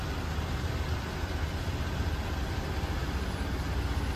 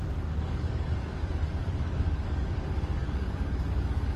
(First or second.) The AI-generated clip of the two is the second